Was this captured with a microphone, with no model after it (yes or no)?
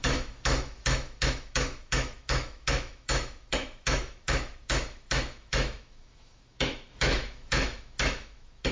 no